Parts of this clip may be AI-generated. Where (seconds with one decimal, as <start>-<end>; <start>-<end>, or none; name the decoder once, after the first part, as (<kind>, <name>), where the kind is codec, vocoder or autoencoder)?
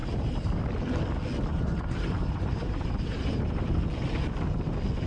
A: 0.0-0.6 (vocoder, BigVGAN v2); 1.5-3.7